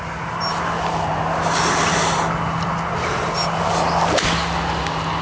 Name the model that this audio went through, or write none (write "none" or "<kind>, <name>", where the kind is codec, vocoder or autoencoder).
none